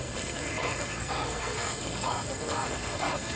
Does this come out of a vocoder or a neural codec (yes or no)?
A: yes